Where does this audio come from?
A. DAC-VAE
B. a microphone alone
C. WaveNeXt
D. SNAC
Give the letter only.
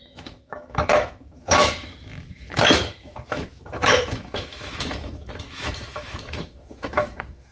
A